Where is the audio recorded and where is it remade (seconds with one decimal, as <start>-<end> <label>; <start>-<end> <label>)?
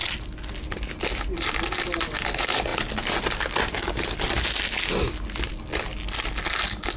0.0-7.0 recorded